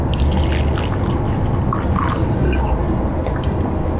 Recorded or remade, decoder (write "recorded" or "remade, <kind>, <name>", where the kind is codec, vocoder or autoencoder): recorded